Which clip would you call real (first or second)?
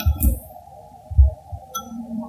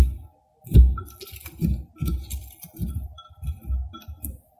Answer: second